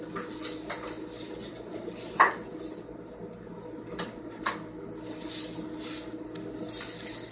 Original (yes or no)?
yes